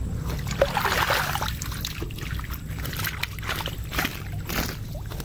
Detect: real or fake real